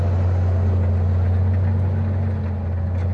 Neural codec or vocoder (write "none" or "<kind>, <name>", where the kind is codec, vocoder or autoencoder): none